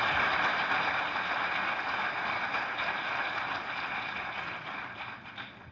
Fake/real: real